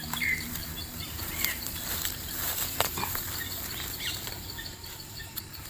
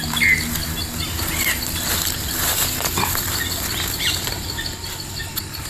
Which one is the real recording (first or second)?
second